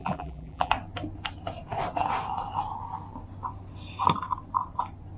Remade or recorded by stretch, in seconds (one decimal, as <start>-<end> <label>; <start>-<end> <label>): 0.0-0.7 remade; 0.7-5.2 recorded